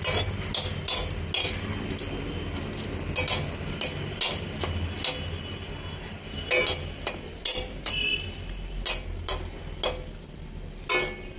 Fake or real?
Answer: real